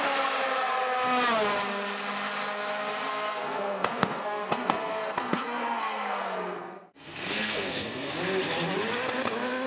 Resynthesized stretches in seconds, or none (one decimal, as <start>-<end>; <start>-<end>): 3.1-8.1